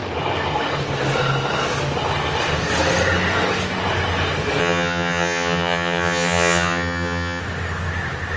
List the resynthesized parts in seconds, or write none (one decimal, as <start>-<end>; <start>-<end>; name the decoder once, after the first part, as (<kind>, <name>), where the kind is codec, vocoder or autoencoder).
4.6-7.4 (vocoder, HiFi-GAN)